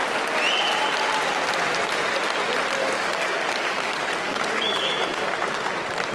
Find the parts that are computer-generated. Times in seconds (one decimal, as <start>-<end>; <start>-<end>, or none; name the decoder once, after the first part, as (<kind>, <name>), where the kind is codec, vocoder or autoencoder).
2.8-5.1 (codec, DAC)

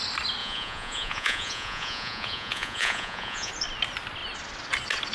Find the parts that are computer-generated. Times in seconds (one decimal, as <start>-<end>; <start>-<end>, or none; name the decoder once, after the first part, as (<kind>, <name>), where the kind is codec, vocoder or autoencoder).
0.4-3.5 (vocoder, Vocos)

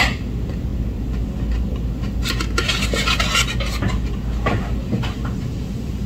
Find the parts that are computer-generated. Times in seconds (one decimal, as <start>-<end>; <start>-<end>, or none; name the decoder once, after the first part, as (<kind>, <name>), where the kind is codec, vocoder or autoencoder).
none

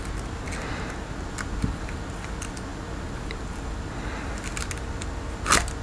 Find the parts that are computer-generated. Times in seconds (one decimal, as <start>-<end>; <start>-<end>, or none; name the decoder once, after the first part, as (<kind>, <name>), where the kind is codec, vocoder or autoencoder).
none

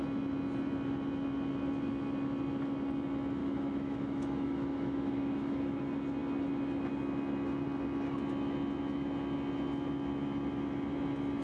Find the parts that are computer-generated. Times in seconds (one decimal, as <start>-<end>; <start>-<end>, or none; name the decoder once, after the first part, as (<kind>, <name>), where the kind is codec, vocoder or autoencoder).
3.4-5.8 (autoencoder, DAC-VAE)

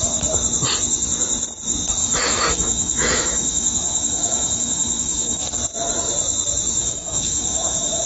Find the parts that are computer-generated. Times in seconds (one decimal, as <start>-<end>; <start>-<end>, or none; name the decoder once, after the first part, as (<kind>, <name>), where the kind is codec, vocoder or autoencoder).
2.0-5.5 (autoencoder, DAC-VAE); 6.8-8.1